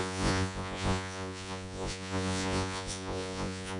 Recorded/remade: remade